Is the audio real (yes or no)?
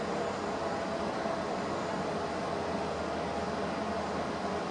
yes